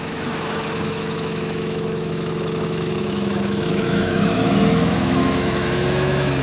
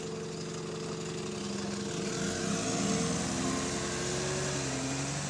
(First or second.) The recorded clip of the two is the second